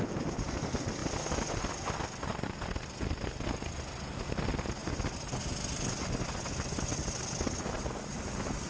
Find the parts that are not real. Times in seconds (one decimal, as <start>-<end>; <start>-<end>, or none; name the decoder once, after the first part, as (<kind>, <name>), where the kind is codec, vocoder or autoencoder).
none